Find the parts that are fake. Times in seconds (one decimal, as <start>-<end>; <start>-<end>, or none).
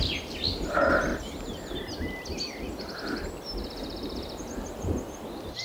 none